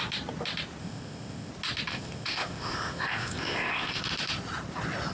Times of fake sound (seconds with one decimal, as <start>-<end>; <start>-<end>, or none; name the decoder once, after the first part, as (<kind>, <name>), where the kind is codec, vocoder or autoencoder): 0.8-1.5 (codec, ZipCodec); 1.9-4.0